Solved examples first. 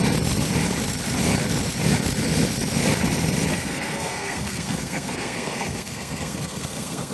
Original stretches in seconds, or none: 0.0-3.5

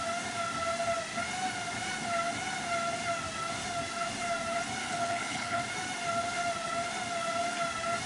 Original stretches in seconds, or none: 0.0-4.8; 5.6-8.1